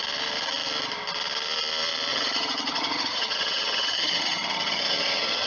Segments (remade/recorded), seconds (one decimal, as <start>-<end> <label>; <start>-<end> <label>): 0.0-2.1 recorded; 2.1-5.5 remade